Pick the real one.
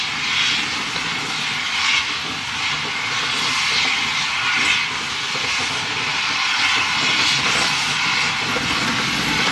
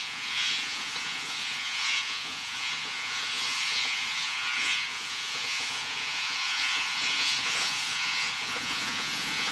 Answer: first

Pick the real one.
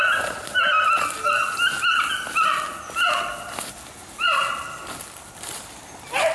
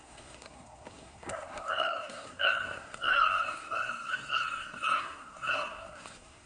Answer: first